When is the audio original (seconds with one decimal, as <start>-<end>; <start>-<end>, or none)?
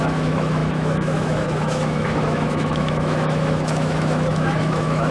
none